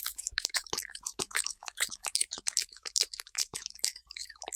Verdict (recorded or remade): remade